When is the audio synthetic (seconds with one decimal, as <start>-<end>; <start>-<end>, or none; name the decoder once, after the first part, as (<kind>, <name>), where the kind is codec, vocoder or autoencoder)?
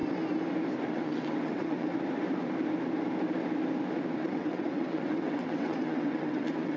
0.9-1.9 (vocoder, WaveNeXt); 4.1-6.8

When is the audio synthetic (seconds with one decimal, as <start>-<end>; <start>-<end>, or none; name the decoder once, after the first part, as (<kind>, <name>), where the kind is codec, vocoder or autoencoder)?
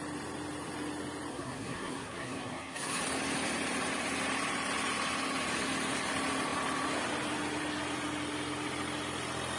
1.3-3.0 (codec, SNAC)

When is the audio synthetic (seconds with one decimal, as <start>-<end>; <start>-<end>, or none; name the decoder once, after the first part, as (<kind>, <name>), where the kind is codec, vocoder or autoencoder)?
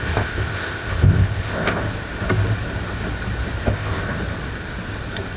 0.0-1.8 (codec, ZipCodec); 3.6-4.0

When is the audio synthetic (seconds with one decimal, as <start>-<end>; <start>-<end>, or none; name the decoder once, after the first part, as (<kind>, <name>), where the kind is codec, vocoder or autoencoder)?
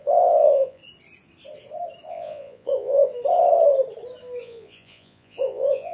0.0-0.8 (vocoder, Vocos); 2.1-3.1; 4.4-5.9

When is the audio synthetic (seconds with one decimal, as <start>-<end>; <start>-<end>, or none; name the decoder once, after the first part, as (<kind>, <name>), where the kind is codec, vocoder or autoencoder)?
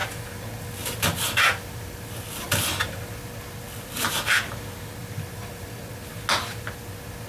1.5-2.7 (vocoder, BigVGAN v2); 5.0-5.8